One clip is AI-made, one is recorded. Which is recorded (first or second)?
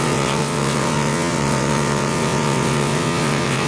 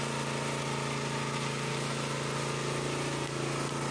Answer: second